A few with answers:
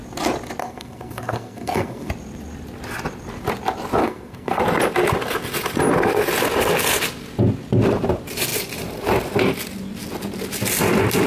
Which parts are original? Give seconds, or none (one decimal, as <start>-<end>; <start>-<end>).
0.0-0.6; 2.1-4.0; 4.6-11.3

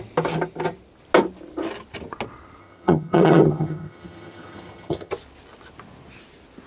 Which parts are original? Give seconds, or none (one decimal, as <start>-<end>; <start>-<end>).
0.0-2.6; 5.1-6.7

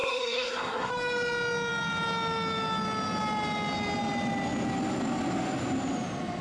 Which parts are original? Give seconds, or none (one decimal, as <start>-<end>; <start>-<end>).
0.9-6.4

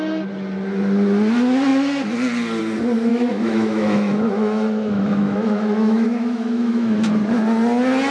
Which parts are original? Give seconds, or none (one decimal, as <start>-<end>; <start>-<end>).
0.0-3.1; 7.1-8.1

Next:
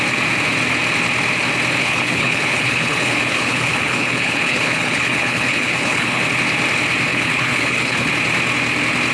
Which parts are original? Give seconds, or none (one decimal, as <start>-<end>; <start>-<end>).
0.0-1.8; 6.2-7.1; 8.1-9.1